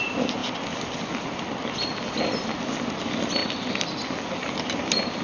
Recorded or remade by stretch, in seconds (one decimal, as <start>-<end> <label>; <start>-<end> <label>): 0.0-5.2 recorded